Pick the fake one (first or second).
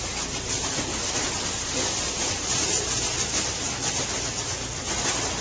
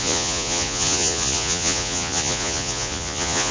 second